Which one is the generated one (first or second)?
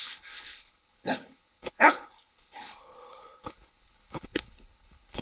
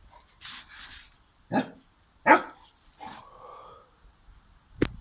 first